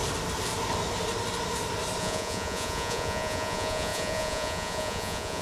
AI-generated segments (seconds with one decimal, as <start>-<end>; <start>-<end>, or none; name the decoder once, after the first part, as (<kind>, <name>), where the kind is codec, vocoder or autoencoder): 2.0-5.4 (vocoder, Vocos)